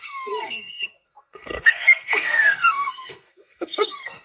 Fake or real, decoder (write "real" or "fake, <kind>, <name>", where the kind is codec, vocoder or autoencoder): fake, codec, SNAC